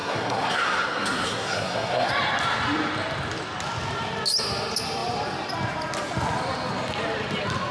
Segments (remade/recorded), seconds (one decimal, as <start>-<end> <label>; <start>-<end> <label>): 0.0-2.1 remade; 2.1-7.7 recorded